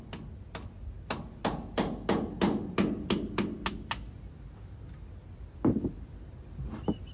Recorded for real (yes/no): yes